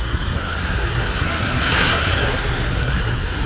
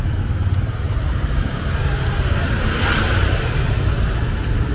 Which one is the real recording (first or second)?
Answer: second